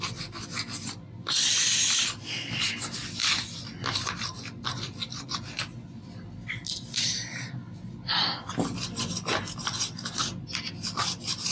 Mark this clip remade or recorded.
recorded